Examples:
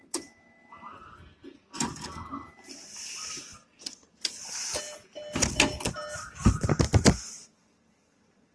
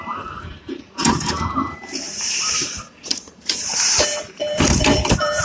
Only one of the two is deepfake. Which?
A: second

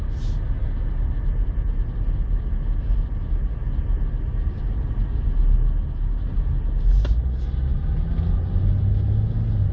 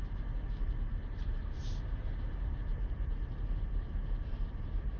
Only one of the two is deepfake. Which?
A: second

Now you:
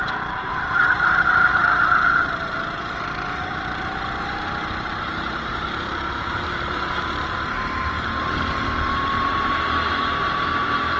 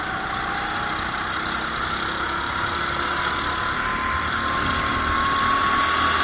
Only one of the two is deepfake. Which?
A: first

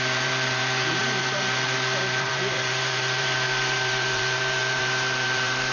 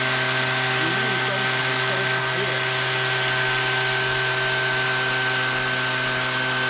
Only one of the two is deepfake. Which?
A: first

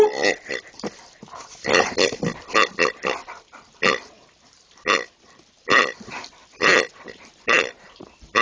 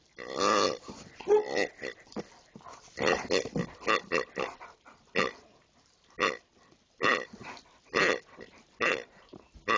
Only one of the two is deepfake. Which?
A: first